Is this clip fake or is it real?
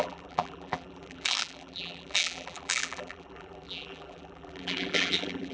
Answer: fake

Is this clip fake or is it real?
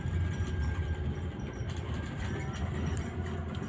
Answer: fake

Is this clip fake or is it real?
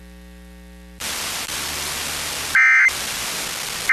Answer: real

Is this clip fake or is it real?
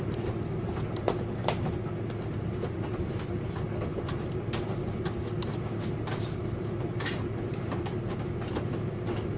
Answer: real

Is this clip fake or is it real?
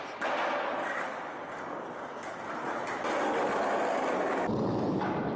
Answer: real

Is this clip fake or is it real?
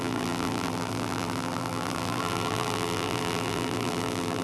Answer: fake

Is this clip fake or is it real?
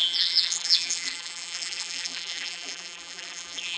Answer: fake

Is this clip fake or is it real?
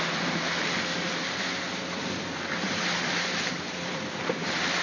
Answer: fake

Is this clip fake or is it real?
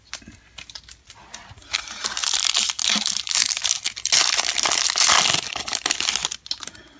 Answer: real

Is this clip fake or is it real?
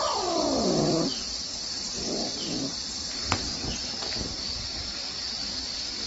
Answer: fake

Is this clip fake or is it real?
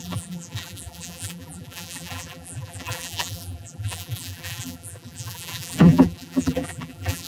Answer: fake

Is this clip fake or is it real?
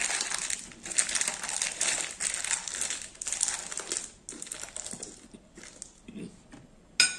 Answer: real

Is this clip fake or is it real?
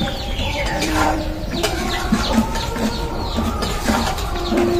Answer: fake